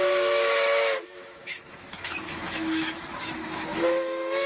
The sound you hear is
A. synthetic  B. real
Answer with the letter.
A